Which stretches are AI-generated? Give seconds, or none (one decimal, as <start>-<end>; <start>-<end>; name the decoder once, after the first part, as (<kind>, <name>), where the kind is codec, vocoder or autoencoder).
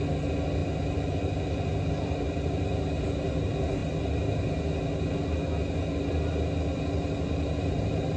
none